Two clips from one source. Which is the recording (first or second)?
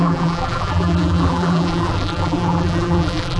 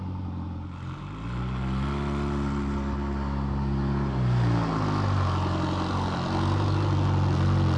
second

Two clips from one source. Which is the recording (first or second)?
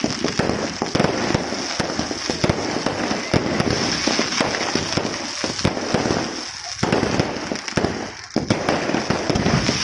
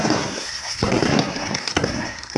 first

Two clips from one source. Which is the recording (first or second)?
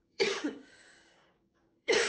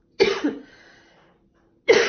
second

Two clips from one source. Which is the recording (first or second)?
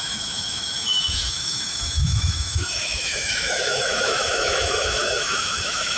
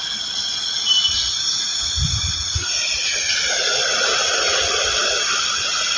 second